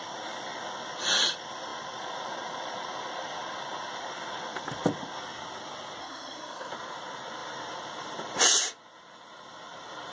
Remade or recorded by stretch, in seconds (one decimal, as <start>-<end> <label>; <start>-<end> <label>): 0.0-6.0 recorded; 6.0-6.7 remade; 6.7-10.1 recorded